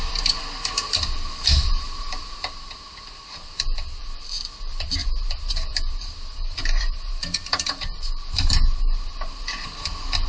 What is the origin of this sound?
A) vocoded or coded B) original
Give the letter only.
A